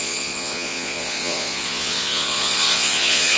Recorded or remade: remade